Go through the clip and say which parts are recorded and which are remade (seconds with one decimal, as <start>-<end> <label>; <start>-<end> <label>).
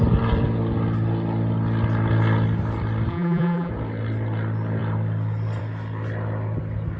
0.0-3.1 recorded; 3.1-3.7 remade; 3.7-7.0 recorded